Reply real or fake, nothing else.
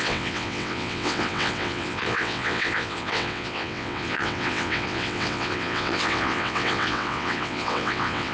fake